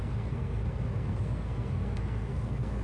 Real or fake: fake